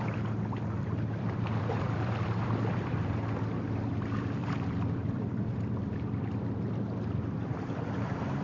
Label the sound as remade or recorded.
remade